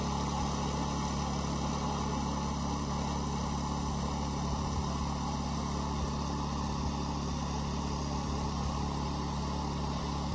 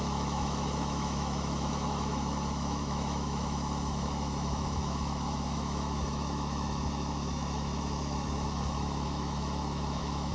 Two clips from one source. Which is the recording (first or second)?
first